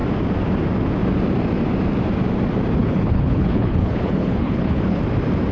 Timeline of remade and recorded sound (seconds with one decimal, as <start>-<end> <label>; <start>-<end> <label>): 0.0-2.8 recorded; 2.8-5.0 remade; 5.0-5.5 recorded